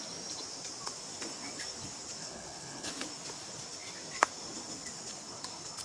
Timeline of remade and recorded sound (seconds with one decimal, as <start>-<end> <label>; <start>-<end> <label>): 0.0-2.2 recorded; 2.2-2.9 remade; 2.9-5.8 recorded